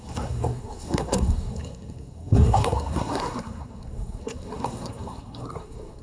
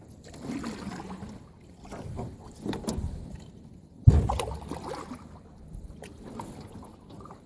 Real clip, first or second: second